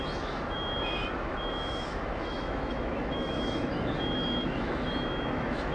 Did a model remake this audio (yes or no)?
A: yes